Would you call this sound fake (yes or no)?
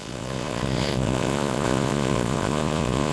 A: yes